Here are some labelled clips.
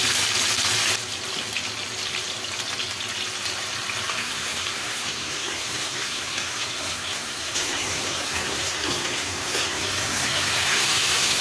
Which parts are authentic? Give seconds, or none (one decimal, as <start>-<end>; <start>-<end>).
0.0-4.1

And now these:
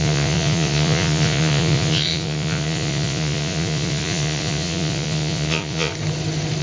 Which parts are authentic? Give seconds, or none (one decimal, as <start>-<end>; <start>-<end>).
5.9-6.6

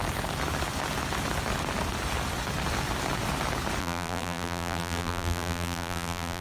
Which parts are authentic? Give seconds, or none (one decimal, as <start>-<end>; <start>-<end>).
0.0-3.8